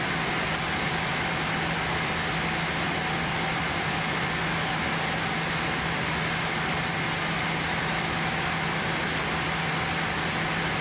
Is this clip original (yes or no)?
yes